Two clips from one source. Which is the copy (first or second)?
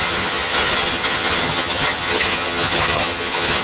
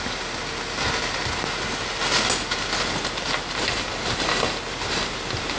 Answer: first